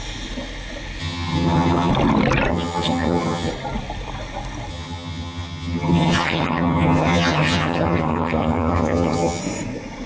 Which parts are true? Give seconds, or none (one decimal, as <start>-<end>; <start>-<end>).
0.0-1.0; 1.9-2.5; 3.5-4.7; 9.4-10.1